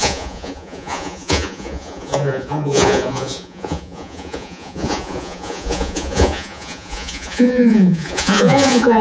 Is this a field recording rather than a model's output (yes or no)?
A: no